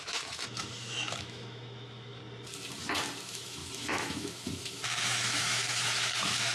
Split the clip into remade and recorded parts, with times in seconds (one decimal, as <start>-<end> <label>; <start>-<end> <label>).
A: 0.0-2.2 remade; 2.2-3.2 recorded; 3.2-6.5 remade